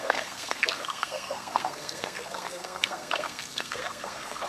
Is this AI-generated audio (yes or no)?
yes